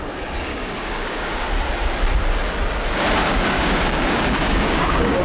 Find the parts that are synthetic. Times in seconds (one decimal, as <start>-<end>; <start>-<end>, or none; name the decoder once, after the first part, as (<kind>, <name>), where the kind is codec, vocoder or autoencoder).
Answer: 0.5-1.5 (codec, DAC); 3.2-5.2